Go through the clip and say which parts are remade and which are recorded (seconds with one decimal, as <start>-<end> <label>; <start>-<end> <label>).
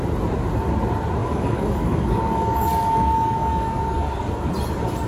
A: 0.0-1.2 recorded; 1.2-4.3 remade; 4.3-5.1 recorded